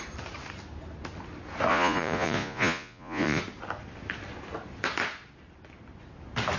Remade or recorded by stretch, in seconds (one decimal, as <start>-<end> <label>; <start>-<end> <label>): 0.0-1.7 recorded; 1.7-3.4 remade; 3.4-6.6 recorded